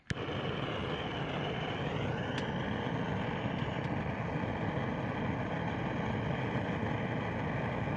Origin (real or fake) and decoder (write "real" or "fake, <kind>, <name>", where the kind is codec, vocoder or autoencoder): real